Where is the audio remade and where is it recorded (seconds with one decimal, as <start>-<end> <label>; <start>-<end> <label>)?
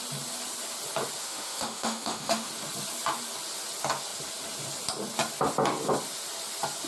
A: 0.0-1.2 recorded; 1.2-2.5 remade; 2.5-6.9 recorded